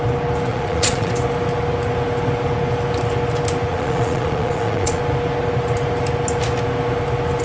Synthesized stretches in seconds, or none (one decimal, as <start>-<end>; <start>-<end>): 0.5-1.1; 3.7-5.0